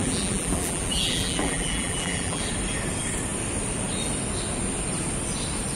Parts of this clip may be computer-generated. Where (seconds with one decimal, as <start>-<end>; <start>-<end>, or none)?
0.0-2.4